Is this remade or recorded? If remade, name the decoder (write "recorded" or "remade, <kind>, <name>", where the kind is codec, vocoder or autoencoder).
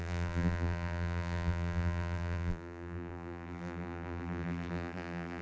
remade, vocoder, BigVGAN v2